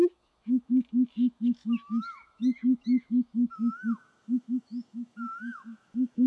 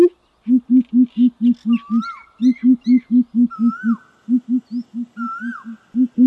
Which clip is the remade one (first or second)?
first